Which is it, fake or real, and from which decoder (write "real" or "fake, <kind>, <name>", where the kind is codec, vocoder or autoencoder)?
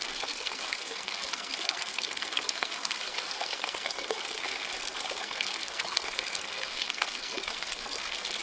fake, codec, SNAC